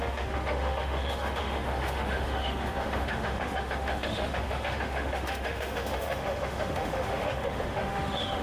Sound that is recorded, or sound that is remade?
remade